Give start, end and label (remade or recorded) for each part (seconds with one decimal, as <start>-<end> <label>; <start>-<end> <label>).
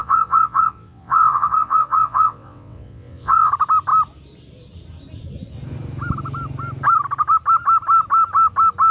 0.0-3.5 remade; 3.5-8.9 recorded